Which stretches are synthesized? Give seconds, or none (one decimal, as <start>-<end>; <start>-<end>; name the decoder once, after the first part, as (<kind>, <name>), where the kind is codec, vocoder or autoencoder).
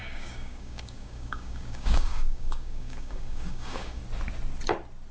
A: 0.0-4.0 (codec, DAC)